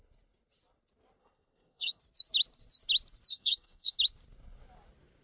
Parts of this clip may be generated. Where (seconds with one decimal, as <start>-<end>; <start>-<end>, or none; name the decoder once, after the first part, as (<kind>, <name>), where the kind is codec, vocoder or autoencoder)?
1.2-2.0 (codec, SNAC); 3.3-4.0